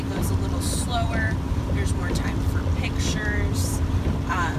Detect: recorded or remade remade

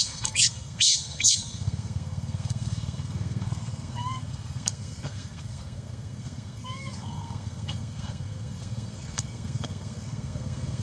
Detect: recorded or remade remade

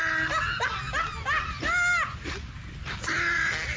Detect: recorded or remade recorded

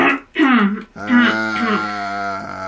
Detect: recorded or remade recorded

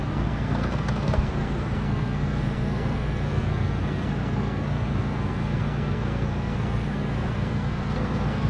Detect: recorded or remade remade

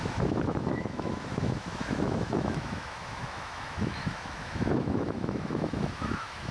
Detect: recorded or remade remade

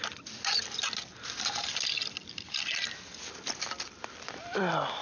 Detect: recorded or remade recorded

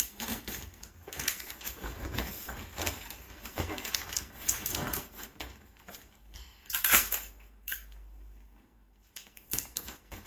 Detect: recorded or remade remade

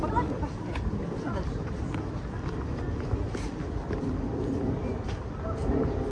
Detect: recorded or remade recorded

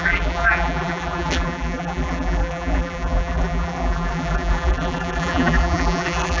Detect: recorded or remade remade